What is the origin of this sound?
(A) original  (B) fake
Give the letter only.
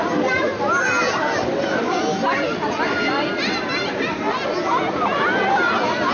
A